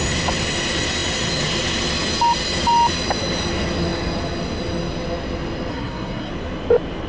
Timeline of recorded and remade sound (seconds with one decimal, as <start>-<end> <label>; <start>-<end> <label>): 0.0-5.7 recorded; 5.7-6.3 remade; 6.3-7.1 recorded